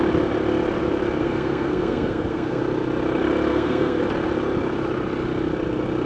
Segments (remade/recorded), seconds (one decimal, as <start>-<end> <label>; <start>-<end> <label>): 0.0-1.2 recorded; 1.2-2.6 remade; 2.6-3.5 recorded; 3.5-4.0 remade; 4.0-6.1 recorded